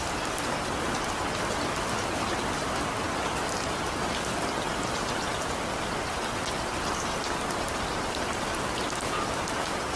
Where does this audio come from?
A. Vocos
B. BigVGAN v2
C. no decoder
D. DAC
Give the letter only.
C